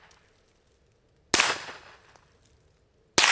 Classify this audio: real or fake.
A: real